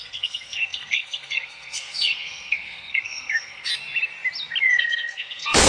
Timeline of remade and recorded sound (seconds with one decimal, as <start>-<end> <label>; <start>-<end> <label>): 0.0-3.7 remade; 3.7-4.6 recorded; 4.6-5.7 remade

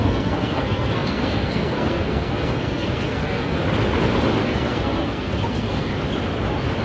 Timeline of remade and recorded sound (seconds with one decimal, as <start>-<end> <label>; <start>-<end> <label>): 0.0-3.6 remade; 3.6-4.4 recorded; 4.4-5.9 remade; 5.9-6.8 recorded

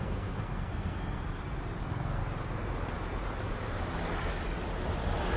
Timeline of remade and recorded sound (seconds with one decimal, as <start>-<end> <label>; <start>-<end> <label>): 0.0-1.2 remade; 1.2-1.8 recorded; 1.8-2.2 remade; 2.2-5.4 recorded

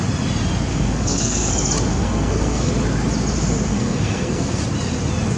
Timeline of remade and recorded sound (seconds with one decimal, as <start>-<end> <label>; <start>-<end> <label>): 0.0-0.7 recorded; 0.7-1.5 remade; 1.5-1.9 recorded; 1.9-2.7 remade; 2.7-3.7 recorded; 3.7-4.6 remade; 4.6-5.4 recorded